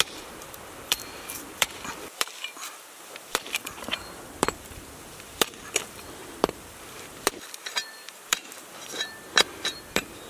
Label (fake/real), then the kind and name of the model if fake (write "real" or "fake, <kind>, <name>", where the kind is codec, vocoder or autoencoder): fake, vocoder, BigVGAN v2